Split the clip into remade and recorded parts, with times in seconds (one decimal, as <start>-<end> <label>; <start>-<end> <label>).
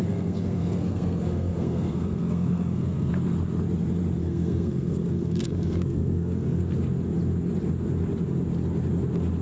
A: 0.0-3.1 remade; 3.1-4.2 recorded; 4.2-6.6 remade; 6.6-9.4 recorded